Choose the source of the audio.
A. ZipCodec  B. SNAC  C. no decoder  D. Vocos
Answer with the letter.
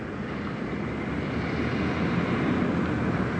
C